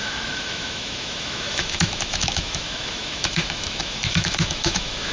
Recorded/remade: remade